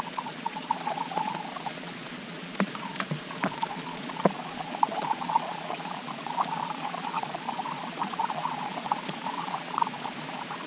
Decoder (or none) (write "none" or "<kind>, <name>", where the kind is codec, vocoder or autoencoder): vocoder, Vocos